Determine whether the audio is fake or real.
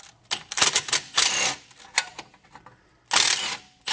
real